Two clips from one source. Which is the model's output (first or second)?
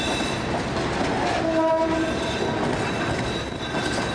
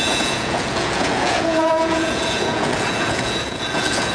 second